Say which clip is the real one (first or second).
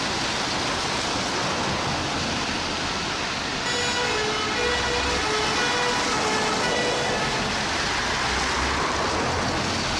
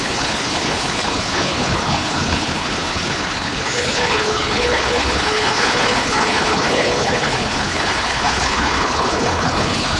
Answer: first